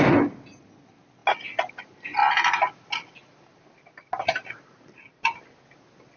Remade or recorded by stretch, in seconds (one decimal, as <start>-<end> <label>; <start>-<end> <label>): 0.0-6.2 recorded